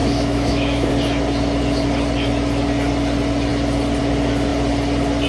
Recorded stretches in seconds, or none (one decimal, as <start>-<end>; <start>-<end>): 0.9-5.3